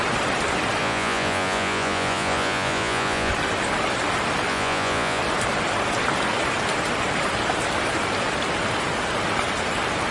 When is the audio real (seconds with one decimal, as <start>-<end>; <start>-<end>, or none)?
0.0-0.8; 3.3-4.5; 5.2-10.1

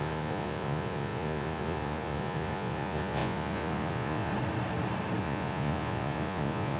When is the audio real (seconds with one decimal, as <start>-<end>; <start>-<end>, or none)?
4.3-5.2

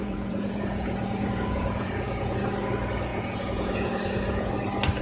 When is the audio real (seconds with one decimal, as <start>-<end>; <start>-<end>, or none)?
2.4-3.1; 4.5-5.0

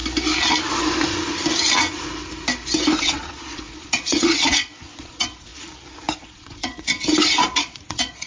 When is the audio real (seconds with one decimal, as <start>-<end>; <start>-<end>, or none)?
0.0-3.0; 5.5-6.2; 6.9-7.4